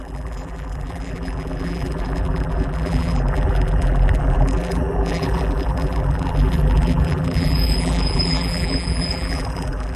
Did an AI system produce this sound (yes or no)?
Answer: yes